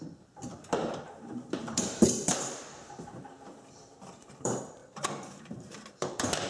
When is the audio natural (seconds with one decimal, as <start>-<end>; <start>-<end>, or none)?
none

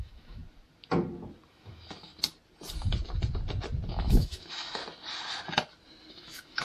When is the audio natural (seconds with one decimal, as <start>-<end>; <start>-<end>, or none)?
0.4-1.5; 2.1-3.9; 4.8-6.1

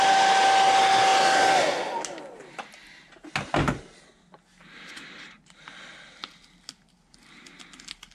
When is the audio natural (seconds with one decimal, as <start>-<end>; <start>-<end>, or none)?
0.0-8.1